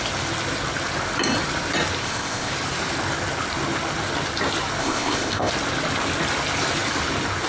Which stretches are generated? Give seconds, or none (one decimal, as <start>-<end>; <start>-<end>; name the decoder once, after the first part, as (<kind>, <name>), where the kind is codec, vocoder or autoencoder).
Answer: 2.0-2.5 (codec, ZipCodec); 4.8-5.5